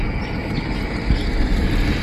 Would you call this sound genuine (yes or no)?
yes